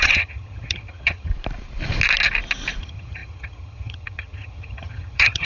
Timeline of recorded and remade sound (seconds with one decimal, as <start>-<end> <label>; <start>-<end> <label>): 0.0-1.3 remade; 1.3-2.8 recorded; 2.8-5.5 remade

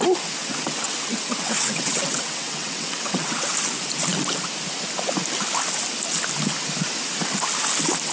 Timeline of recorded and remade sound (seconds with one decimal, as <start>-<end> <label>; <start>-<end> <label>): 0.0-0.4 recorded; 0.4-3.5 remade; 3.5-8.1 recorded

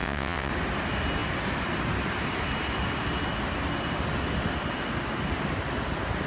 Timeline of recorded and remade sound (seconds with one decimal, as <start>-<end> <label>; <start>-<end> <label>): 0.0-0.5 remade; 0.5-6.3 recorded

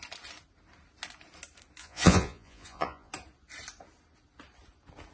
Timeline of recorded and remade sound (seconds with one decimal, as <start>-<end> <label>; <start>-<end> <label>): 0.0-1.8 recorded; 1.8-3.1 remade; 3.1-5.1 recorded

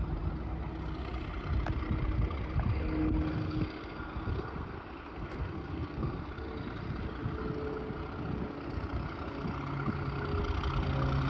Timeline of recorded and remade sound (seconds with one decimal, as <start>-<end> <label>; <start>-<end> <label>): 0.0-3.4 recorded; 3.4-6.2 remade; 6.2-11.3 recorded

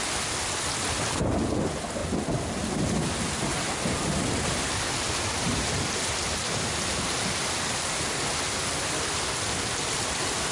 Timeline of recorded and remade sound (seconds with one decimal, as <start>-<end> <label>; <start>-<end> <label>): 0.0-10.5 recorded

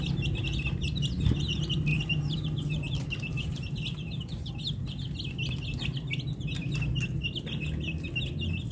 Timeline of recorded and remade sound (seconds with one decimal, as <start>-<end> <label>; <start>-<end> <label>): 0.0-1.9 recorded; 1.9-4.5 remade; 4.5-8.7 recorded

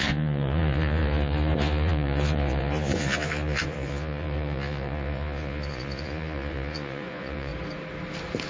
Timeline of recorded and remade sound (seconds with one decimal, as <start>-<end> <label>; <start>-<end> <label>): 0.0-7.5 remade; 7.5-8.5 recorded